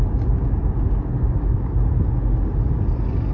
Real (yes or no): yes